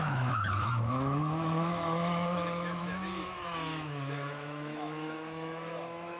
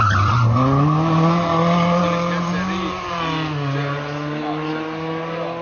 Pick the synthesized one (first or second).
first